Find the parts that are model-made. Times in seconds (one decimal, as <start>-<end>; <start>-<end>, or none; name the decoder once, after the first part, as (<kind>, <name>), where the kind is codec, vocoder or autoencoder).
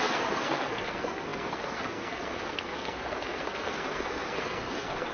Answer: 0.0-5.1 (codec, SNAC)